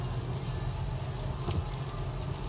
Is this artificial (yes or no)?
no